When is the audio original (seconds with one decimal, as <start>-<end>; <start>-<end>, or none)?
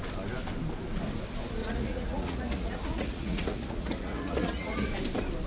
0.0-1.6; 4.9-5.5